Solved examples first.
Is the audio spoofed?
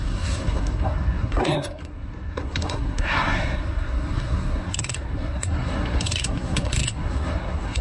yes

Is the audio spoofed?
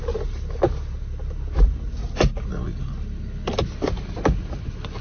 no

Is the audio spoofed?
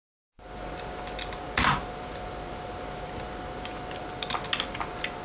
no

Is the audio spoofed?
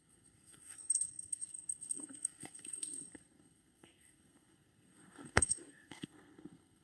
yes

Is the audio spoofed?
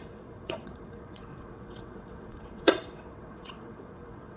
yes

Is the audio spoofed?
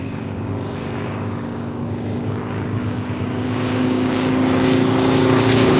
yes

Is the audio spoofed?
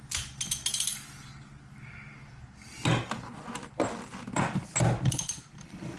no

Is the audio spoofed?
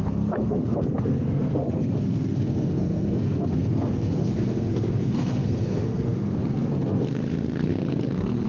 yes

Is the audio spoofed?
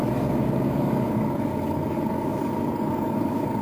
yes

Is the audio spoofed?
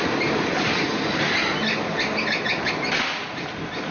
no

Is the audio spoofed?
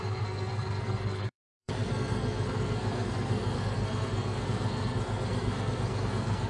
yes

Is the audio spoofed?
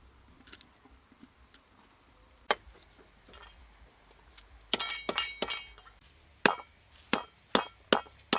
no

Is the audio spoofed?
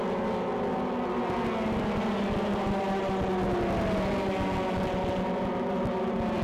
no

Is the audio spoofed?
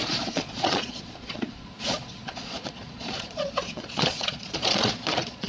yes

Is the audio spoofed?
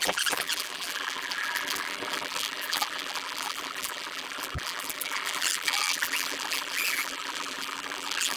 yes